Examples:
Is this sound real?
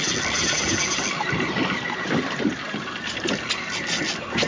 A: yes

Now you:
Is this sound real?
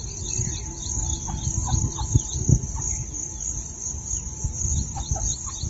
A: yes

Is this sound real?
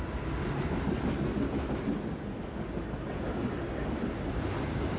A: yes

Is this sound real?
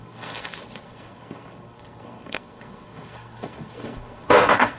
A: no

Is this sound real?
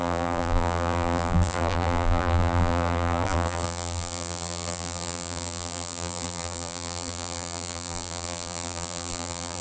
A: no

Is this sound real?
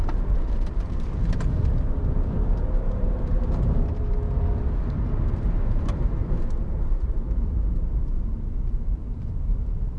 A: no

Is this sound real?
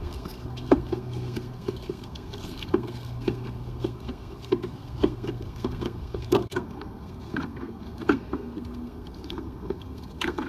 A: no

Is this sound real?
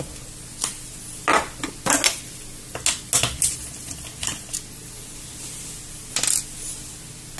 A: yes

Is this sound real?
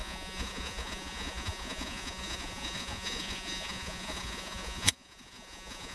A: no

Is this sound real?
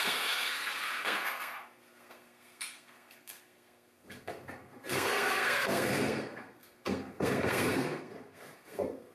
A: no